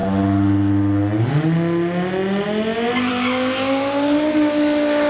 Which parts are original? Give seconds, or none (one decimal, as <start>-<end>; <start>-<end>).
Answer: 0.0-5.1